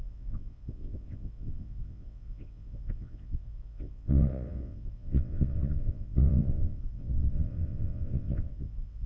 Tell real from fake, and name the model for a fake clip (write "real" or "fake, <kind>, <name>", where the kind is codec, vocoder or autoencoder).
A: fake, vocoder, WaveNeXt